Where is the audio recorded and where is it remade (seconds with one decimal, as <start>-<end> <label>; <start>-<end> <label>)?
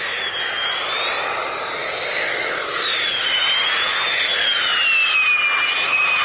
0.0-1.8 recorded; 1.8-3.4 remade; 3.4-6.2 recorded